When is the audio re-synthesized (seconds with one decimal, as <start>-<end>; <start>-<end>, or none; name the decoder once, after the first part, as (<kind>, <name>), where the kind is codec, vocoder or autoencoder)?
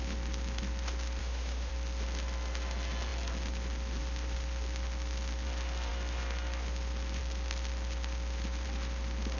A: 1.2-1.7 (autoencoder, DAC-VAE)